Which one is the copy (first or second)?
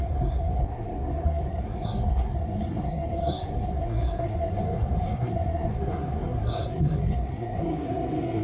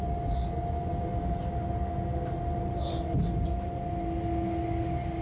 first